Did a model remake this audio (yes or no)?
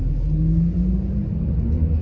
no